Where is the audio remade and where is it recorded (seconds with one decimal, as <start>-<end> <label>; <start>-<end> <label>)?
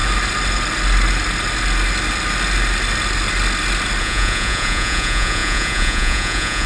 0.0-4.0 recorded; 4.0-6.7 remade